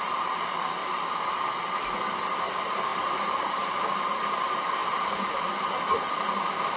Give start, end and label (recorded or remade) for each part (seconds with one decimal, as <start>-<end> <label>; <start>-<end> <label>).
0.0-0.8 remade; 0.8-2.4 recorded; 2.4-6.8 remade